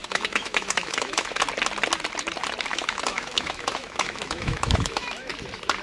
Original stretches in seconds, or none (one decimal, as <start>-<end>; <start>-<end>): 1.4-2.7; 5.3-5.8